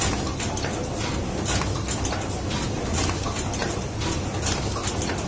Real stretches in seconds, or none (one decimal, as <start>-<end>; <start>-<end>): 0.0-5.3